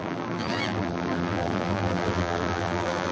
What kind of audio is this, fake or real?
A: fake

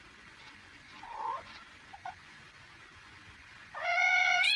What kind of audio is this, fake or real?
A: fake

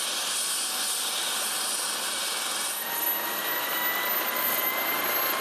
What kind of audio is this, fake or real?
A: real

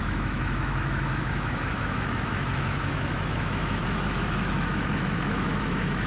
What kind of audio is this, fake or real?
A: fake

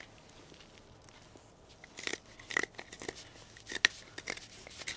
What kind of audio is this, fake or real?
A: real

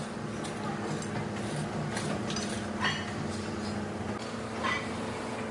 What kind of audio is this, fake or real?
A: real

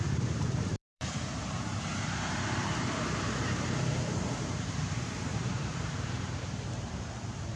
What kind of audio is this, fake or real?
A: fake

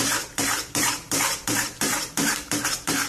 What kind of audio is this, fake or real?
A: fake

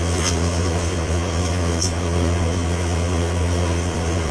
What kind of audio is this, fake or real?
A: fake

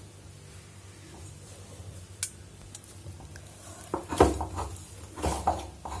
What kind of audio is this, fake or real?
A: real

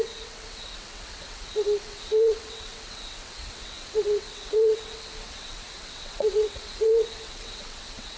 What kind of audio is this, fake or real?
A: fake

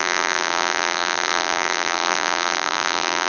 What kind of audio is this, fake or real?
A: fake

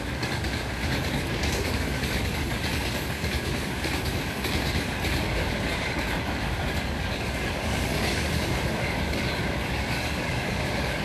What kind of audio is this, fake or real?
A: fake